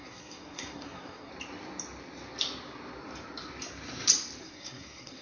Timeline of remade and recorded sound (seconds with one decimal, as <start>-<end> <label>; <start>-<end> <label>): 0.0-1.3 remade; 1.3-4.4 recorded; 4.4-5.2 remade